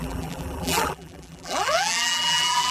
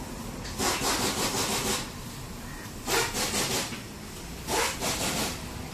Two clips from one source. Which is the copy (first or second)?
first